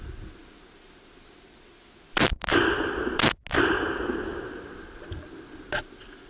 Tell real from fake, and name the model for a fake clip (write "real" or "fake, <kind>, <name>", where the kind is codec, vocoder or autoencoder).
real